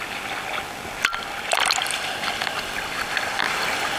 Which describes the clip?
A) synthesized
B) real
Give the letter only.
B